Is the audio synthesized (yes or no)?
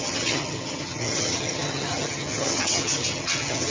yes